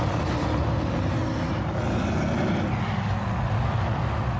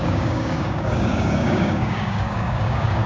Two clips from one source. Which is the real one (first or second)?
first